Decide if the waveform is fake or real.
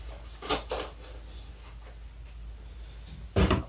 real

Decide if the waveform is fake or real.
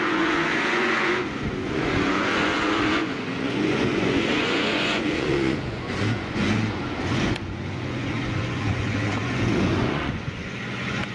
fake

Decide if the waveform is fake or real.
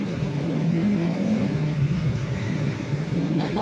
fake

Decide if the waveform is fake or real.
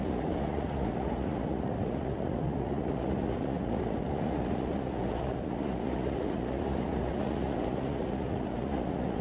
fake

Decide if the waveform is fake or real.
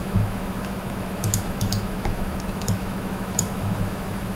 fake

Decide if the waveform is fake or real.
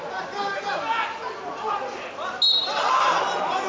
real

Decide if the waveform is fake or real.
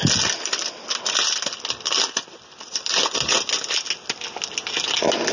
real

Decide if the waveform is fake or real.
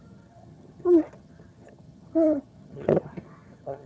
fake